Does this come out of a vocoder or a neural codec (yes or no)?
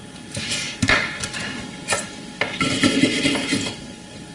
no